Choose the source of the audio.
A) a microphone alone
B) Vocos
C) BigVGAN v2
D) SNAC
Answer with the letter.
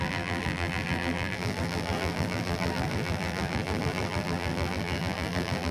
C